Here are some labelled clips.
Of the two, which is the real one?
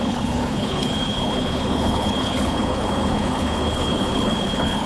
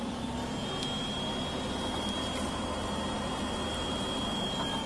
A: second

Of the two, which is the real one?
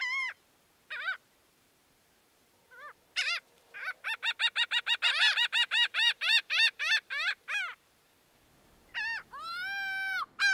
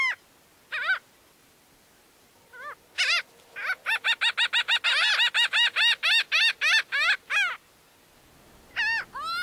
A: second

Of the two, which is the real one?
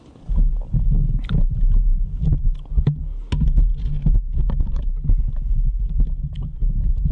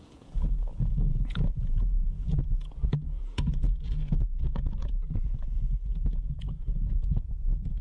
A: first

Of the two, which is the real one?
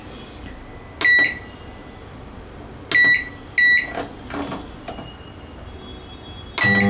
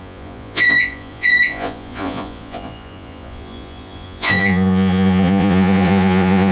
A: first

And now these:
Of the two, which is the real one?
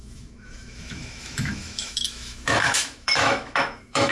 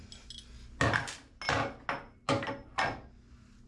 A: second